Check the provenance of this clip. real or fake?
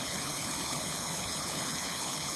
fake